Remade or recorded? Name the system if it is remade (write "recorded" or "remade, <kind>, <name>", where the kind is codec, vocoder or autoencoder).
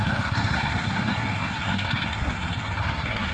remade, codec, SNAC